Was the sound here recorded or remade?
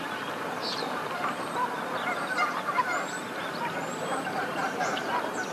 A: remade